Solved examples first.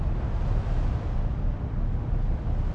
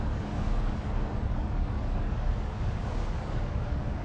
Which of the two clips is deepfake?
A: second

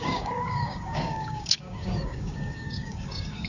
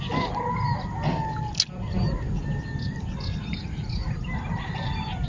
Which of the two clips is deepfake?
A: first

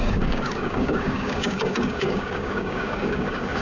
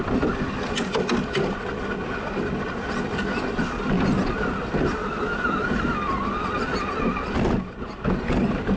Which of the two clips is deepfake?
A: first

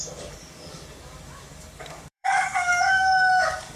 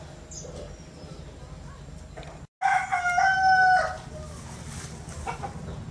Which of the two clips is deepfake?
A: first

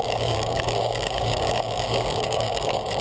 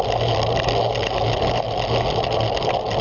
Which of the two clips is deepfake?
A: first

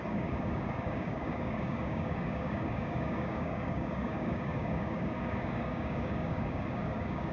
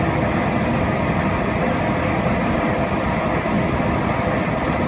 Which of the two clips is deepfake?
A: first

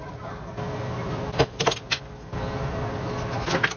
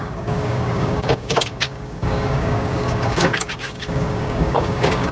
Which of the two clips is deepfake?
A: second